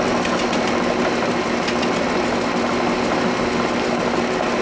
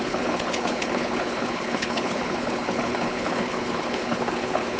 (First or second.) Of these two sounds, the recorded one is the first